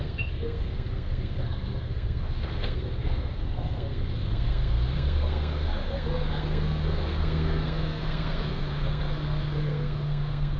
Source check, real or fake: fake